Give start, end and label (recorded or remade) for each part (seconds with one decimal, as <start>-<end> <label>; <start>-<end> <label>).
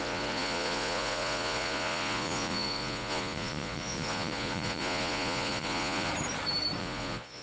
0.0-6.1 remade; 6.1-6.8 recorded; 6.8-7.4 remade